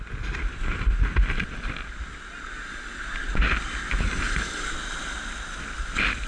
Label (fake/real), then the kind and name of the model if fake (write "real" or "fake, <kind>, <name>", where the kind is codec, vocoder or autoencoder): real